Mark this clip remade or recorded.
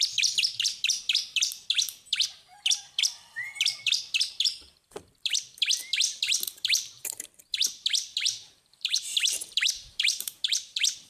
remade